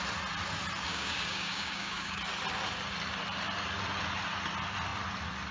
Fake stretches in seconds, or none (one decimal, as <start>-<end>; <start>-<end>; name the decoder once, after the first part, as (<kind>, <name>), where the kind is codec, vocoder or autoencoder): 0.9-2.2 (codec, DAC)